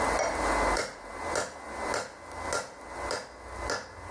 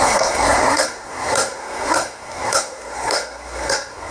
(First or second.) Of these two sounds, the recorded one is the first